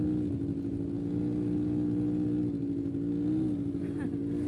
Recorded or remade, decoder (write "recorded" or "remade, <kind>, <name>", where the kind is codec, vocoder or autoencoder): recorded